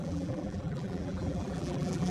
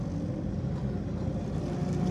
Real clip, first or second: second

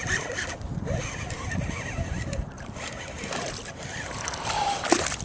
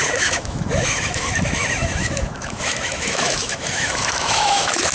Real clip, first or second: first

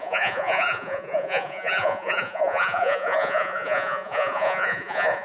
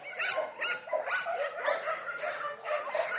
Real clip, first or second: second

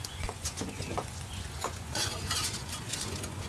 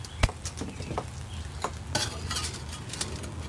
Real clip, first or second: second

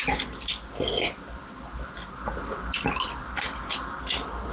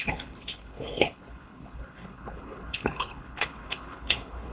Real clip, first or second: first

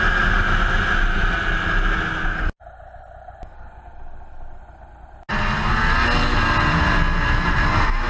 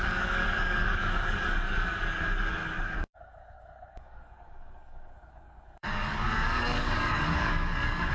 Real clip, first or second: first